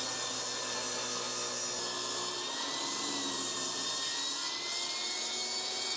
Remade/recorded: recorded